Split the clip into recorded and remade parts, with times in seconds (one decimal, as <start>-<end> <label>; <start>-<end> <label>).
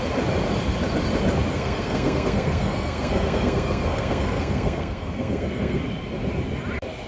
0.0-1.5 recorded; 1.5-5.8 remade; 5.8-7.1 recorded